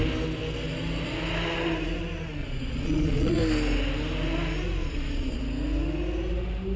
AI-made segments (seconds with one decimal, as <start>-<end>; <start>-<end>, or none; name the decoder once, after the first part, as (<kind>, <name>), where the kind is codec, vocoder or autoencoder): 2.4-3.4 (vocoder, Vocos); 4.8-5.4